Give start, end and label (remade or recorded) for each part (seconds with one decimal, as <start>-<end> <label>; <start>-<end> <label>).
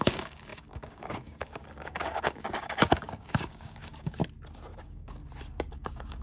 0.0-4.2 remade; 4.2-4.8 recorded; 4.8-5.2 remade; 5.2-5.7 recorded; 5.7-6.2 remade